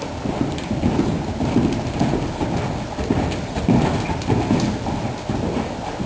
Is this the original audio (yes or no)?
yes